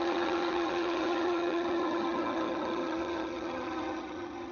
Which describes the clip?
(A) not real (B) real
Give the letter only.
A